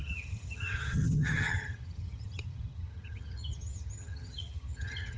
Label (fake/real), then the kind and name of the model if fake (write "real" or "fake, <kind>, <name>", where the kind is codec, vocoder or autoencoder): fake, vocoder, HiFi-GAN